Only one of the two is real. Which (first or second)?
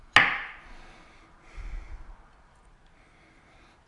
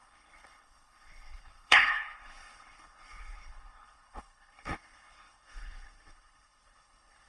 first